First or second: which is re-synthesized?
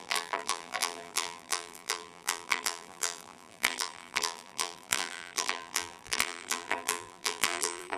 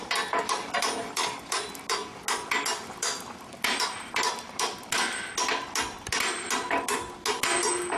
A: first